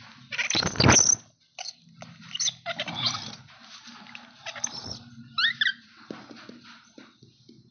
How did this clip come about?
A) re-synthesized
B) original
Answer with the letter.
B